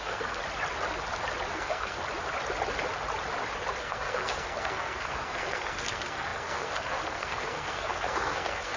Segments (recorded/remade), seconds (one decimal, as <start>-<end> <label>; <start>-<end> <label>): 0.0-0.4 remade; 0.4-1.5 recorded; 1.5-2.0 remade; 2.0-3.8 recorded; 3.8-8.8 remade